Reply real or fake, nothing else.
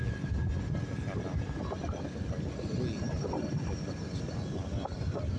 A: real